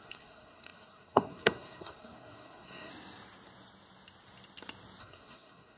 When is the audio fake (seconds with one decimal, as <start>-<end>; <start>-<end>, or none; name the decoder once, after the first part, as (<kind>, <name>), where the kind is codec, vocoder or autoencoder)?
0.0-2.9 (codec, SNAC); 5.0-5.8